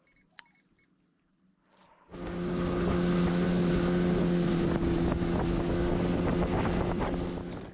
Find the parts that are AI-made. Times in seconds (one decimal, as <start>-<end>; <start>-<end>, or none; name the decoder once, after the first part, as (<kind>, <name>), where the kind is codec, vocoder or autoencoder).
none